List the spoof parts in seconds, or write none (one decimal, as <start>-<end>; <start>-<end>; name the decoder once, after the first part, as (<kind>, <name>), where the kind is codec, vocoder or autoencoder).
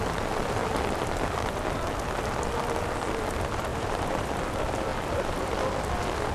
3.7-4.3 (vocoder, BigVGAN v2)